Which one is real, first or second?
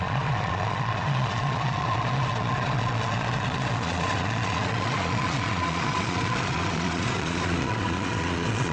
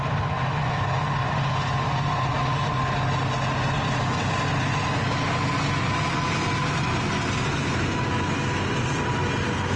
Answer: second